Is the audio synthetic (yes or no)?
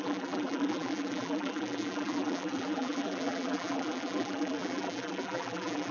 yes